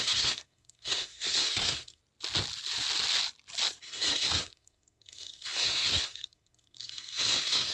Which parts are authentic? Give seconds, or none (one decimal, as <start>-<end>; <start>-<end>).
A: 2.0-3.8